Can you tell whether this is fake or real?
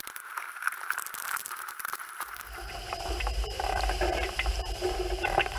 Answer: fake